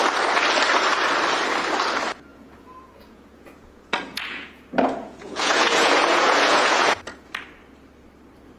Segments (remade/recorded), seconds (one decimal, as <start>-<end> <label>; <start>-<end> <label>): 0.0-2.3 recorded; 2.3-7.3 remade; 7.3-8.6 recorded